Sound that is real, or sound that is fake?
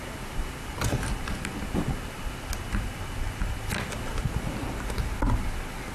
real